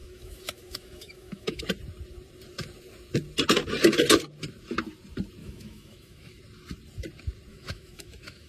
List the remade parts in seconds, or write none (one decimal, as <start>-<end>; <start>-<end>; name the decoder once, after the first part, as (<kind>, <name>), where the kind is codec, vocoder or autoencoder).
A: 0.0-1.6 (autoencoder, DAC-VAE); 5.4-6.4; 7.5-8.5